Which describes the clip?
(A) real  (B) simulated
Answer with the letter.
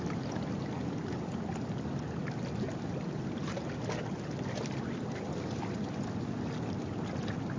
A